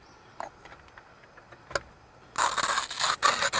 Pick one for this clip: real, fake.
real